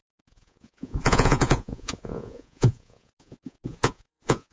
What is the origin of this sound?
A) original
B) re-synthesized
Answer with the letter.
B